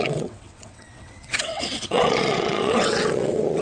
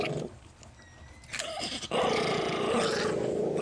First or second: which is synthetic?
first